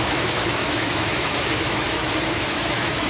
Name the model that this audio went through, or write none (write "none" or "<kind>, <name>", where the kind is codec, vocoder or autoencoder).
autoencoder, DAC-VAE